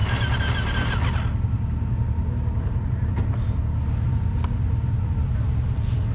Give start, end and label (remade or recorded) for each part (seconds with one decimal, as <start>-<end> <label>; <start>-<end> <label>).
0.0-6.1 recorded